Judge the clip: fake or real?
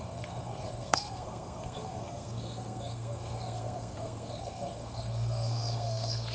fake